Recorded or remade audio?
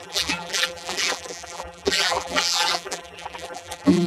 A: remade